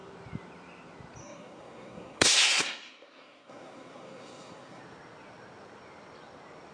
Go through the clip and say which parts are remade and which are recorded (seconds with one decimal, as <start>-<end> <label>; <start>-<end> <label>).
0.0-1.2 recorded; 1.2-4.8 remade; 4.8-6.7 recorded